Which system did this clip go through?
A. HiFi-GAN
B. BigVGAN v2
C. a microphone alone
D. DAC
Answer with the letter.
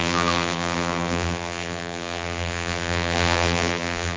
B